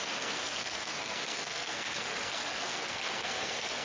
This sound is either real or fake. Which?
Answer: fake